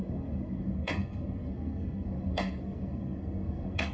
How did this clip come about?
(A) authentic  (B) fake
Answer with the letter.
B